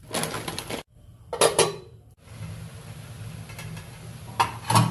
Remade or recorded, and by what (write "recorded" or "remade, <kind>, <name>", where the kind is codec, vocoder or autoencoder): recorded